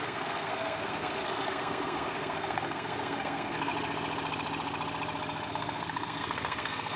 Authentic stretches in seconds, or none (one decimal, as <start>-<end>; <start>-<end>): 3.7-5.5